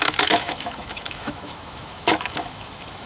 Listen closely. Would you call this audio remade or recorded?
remade